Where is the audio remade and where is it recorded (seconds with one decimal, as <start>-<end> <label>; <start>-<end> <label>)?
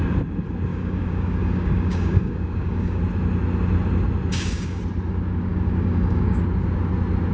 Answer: 0.0-0.7 recorded; 0.7-3.0 remade; 3.0-4.3 recorded; 4.3-4.8 remade; 4.8-5.5 recorded; 5.5-6.4 remade; 6.4-7.3 recorded